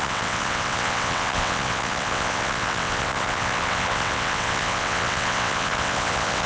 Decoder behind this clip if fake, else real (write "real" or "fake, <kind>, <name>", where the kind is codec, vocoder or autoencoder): fake, vocoder, WaveNeXt